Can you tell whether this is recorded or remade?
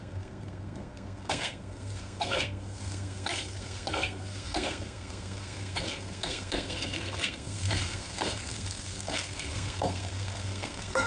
remade